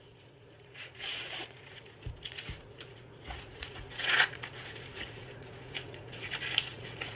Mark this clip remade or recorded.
remade